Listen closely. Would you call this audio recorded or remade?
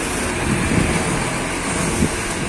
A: recorded